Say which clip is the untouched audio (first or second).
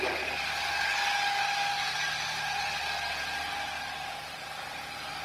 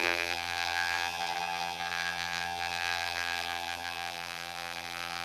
first